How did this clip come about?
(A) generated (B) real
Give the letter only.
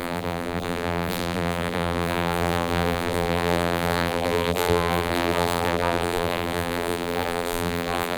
A